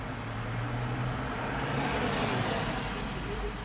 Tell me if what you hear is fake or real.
real